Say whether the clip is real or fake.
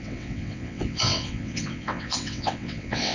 fake